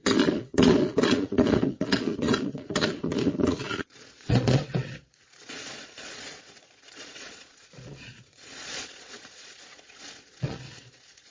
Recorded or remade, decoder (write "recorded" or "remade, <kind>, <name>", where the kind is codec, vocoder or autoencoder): remade, vocoder, Vocos